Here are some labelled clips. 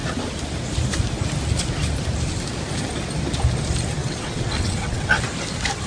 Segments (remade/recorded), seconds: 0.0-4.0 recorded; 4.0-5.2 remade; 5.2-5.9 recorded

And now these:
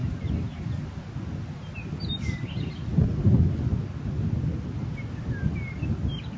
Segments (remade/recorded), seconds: 0.0-6.4 recorded

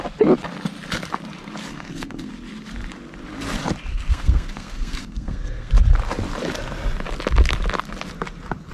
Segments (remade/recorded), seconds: 0.0-1.7 recorded; 1.7-2.3 remade; 2.3-3.9 recorded; 3.9-5.7 remade; 5.7-8.7 recorded

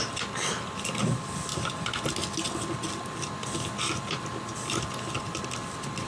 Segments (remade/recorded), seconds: 0.0-6.1 recorded

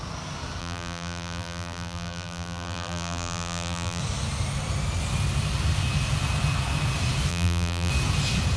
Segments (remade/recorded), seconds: 0.0-0.6 recorded; 0.6-4.0 remade; 4.0-7.3 recorded; 7.3-7.9 remade; 7.9-8.6 recorded